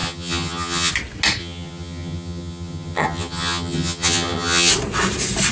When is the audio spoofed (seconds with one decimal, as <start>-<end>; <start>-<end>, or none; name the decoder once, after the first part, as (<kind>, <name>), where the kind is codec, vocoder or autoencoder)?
0.0-0.9 (vocoder, HiFi-GAN); 1.4-4.7